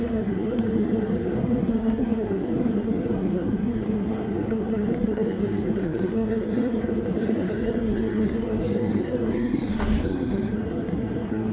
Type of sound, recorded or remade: remade